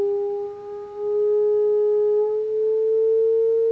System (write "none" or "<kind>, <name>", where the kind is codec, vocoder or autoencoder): none